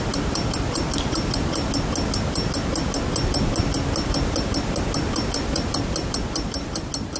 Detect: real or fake real